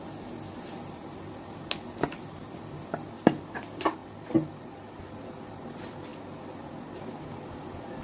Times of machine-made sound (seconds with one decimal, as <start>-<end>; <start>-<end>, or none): none